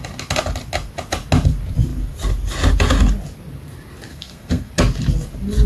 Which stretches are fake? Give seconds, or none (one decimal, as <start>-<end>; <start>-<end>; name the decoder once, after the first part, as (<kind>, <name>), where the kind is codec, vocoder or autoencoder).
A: 4.1-4.7 (codec, SNAC)